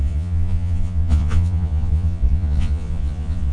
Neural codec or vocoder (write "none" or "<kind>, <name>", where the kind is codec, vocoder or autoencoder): vocoder, Vocos